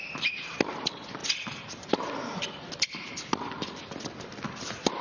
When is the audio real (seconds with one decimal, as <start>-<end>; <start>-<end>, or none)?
0.0-5.0